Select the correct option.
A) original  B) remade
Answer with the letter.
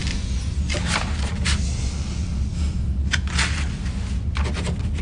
A